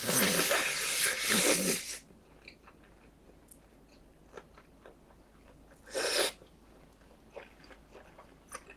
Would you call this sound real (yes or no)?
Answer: yes